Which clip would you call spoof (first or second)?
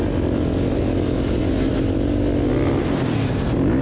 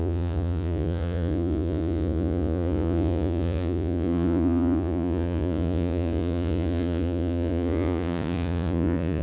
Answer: second